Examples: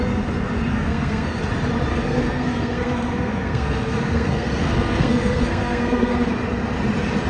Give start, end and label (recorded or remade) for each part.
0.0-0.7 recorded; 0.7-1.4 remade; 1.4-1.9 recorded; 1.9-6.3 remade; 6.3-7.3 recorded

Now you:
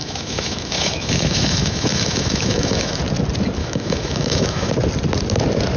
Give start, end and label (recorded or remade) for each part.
0.0-3.0 remade; 3.0-3.6 recorded; 3.6-4.7 remade; 4.7-5.8 recorded